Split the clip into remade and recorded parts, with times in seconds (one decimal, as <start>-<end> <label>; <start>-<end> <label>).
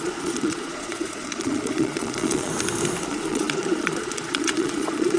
0.0-2.5 remade; 2.5-3.1 recorded; 3.1-5.2 remade